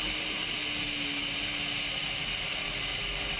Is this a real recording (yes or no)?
yes